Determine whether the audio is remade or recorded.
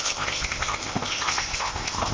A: remade